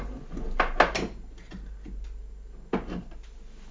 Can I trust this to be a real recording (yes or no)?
yes